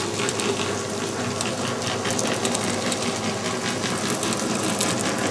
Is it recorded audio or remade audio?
recorded